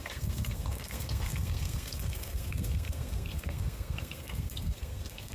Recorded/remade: remade